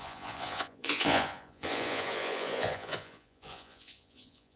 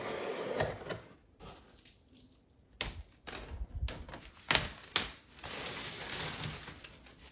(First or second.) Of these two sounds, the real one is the second